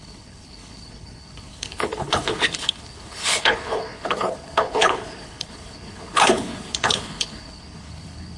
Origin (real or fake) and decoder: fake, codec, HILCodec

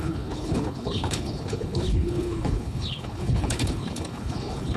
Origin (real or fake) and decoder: fake, codec, HILCodec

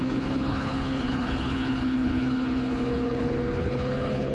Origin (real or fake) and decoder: fake, codec, HILCodec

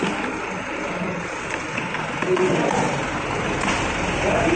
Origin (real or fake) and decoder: real